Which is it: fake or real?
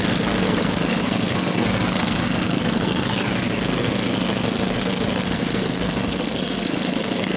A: fake